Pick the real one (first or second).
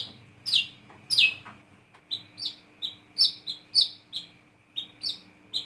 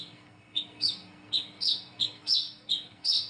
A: first